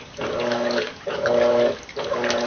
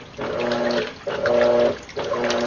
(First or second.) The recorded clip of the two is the second